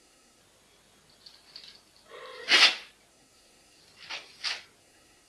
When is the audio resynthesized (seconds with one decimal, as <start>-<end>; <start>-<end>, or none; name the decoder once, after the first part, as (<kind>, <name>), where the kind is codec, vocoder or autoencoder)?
0.0-0.4 (codec, SNAC); 3.1-3.8; 4.8-5.3